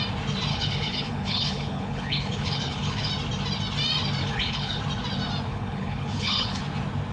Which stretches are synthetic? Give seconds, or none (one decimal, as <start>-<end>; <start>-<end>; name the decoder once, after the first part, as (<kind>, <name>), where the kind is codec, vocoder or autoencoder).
0.5-3.1 (codec, HILCodec); 4.2-4.8; 5.5-6.6